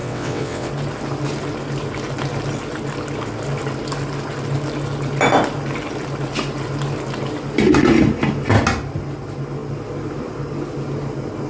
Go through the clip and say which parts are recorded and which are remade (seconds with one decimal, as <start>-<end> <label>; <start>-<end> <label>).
0.0-0.7 remade; 0.7-11.5 recorded